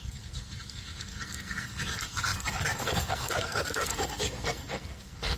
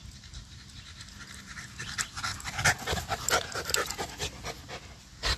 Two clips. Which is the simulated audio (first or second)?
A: first